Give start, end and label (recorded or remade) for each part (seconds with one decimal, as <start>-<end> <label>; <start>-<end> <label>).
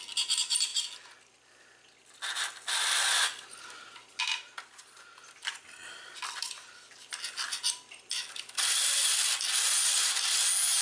0.0-10.8 recorded